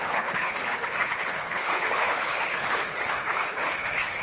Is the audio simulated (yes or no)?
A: yes